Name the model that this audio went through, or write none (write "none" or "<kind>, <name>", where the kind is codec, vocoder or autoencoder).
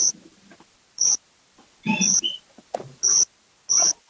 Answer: none